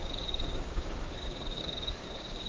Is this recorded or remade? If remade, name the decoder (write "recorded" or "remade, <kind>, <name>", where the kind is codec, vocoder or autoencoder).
remade, codec, DAC